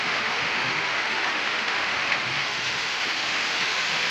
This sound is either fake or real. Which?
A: fake